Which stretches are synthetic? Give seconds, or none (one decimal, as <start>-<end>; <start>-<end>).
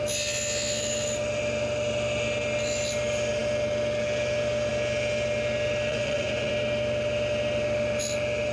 5.9-6.5